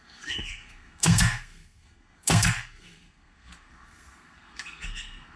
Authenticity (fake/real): fake